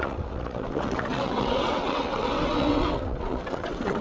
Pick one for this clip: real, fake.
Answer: fake